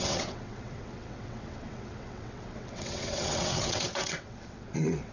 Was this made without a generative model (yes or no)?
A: no